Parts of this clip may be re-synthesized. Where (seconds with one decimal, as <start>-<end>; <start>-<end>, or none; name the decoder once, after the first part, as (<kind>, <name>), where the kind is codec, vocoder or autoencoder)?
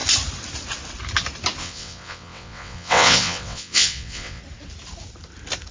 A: 1.6-4.4 (vocoder, WaveNeXt)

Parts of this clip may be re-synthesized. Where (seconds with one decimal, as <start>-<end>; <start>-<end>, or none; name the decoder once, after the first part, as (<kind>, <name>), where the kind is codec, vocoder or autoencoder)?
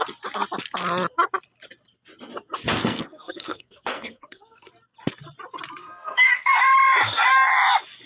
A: 2.8-4.7 (codec, SNAC); 5.8-6.6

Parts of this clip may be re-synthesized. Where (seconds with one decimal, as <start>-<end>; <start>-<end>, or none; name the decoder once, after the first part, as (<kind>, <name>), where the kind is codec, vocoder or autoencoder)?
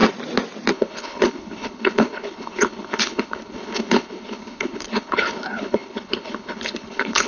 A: 0.7-7.3 (codec, HILCodec)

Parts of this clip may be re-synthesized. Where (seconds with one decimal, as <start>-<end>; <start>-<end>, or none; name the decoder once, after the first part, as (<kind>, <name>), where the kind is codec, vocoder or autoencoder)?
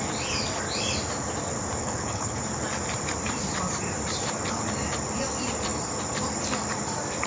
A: 1.8-2.4 (codec, HILCodec)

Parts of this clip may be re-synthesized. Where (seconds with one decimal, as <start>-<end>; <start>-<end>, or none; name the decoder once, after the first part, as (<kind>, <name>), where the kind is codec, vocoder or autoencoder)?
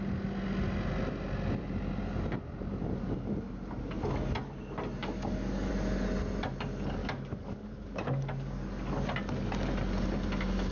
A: 5.0-5.7 (codec, DAC); 7.0-8.9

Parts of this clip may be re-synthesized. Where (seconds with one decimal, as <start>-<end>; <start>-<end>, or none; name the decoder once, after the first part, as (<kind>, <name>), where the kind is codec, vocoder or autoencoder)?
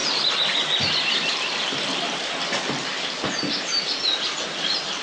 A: none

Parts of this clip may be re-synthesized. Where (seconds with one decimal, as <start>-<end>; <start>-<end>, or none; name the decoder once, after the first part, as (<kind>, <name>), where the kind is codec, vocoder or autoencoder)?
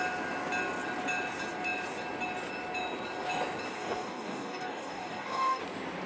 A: 3.7-5.6 (codec, DAC)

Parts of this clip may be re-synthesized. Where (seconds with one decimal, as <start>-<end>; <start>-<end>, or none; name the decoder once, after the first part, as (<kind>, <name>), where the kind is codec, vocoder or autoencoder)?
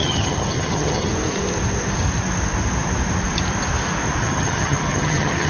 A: 0.0-1.1 (vocoder, HiFi-GAN); 4.2-5.5